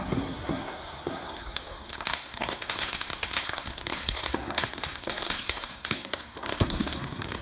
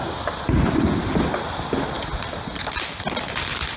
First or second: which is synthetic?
first